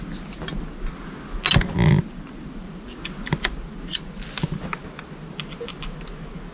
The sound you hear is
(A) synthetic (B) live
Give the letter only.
B